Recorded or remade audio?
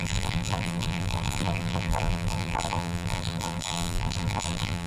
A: remade